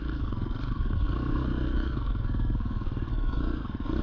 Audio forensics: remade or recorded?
remade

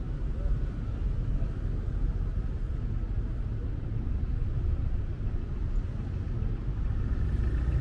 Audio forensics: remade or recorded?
recorded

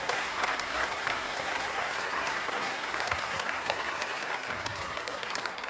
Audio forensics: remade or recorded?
remade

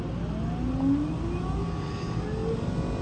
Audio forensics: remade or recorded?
recorded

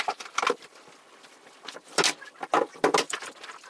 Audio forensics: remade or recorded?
recorded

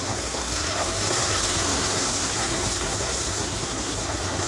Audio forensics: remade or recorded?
remade